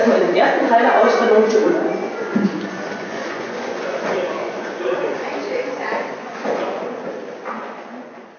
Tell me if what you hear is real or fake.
fake